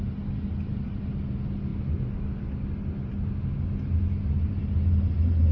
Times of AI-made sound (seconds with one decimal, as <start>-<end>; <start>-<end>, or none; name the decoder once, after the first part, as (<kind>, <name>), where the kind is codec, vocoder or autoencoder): none